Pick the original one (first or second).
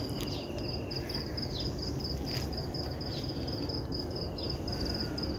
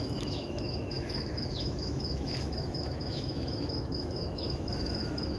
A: first